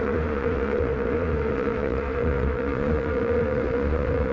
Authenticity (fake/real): fake